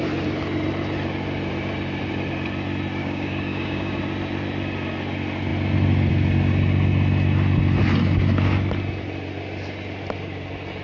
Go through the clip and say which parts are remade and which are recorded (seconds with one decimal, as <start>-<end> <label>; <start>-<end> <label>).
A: 0.0-3.0 recorded; 3.0-4.0 remade; 4.0-10.8 recorded